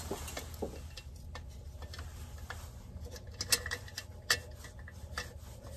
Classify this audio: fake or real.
real